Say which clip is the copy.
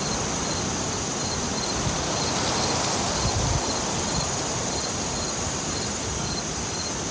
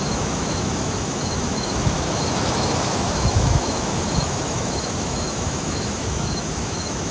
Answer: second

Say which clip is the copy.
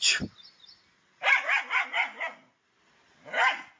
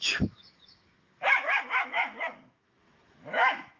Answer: second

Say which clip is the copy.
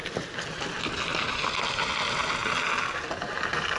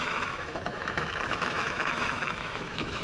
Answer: second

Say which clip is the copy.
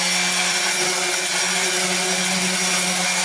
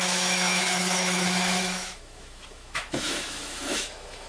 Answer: second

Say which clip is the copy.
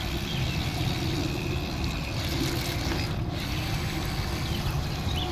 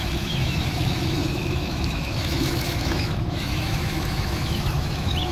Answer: second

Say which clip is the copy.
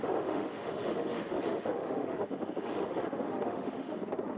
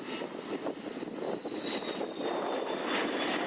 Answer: first